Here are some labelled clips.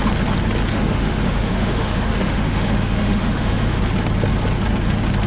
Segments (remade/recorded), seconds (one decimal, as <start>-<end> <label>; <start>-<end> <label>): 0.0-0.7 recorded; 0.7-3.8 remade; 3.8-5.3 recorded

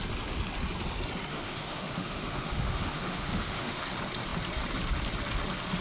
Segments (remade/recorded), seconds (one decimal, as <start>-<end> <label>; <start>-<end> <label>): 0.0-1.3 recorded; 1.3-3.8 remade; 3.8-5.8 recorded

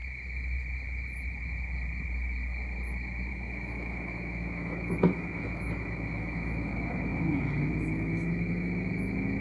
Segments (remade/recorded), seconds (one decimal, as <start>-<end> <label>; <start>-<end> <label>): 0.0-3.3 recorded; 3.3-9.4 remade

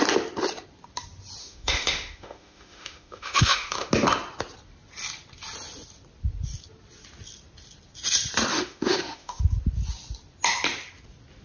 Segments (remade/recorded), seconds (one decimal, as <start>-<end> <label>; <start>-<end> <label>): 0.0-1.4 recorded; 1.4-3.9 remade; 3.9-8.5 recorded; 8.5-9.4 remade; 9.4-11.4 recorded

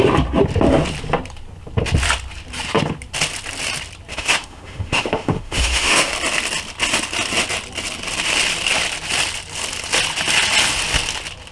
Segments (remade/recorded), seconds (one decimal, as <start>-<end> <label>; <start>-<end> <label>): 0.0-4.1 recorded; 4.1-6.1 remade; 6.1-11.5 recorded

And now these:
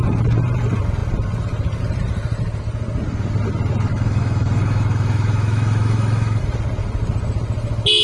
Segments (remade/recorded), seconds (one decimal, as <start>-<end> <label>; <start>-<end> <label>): 0.0-3.9 recorded; 3.9-6.4 remade; 6.4-8.0 recorded